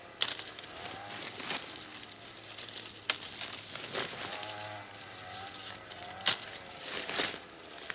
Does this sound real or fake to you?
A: real